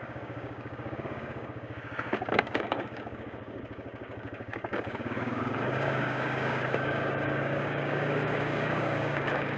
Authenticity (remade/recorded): remade